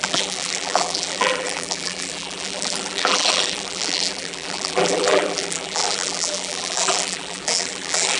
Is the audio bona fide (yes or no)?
no